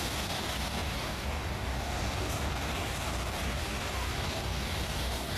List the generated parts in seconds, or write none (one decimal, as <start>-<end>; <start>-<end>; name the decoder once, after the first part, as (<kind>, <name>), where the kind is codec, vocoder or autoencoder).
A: 0.0-5.4 (codec, DAC)